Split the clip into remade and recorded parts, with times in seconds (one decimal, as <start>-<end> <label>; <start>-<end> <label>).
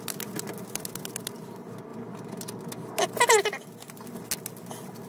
0.0-5.1 recorded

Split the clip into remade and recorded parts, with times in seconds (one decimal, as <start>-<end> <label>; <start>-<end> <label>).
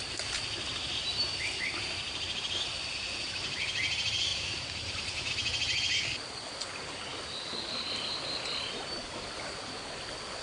0.0-0.9 recorded; 0.9-2.7 remade; 2.7-4.3 recorded; 4.3-5.3 remade; 5.3-10.4 recorded